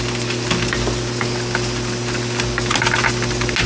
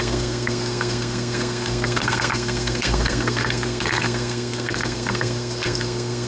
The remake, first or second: second